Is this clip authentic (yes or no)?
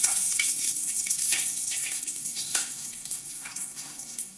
no